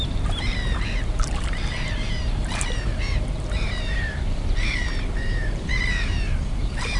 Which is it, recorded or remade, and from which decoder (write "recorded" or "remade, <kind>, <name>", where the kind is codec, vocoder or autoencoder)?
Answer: remade, vocoder, BigVGAN v2